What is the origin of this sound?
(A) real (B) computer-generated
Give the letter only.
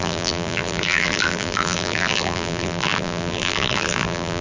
B